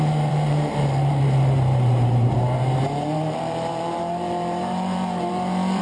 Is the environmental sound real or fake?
fake